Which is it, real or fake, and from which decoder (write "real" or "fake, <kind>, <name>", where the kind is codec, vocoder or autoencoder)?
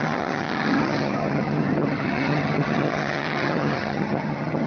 fake, vocoder, HiFi-GAN